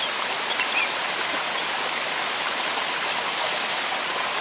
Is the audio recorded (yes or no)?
yes